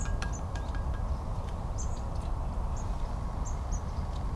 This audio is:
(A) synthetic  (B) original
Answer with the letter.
B